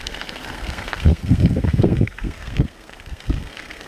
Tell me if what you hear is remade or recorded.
remade